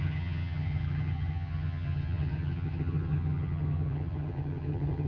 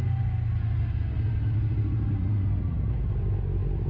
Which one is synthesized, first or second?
first